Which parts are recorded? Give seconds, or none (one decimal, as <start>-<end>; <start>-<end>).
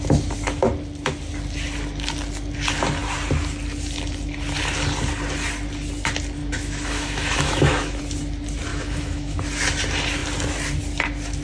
0.0-6.4; 8.0-8.7; 9.4-11.4